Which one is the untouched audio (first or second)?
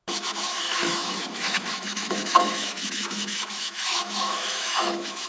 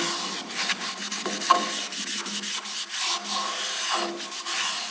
second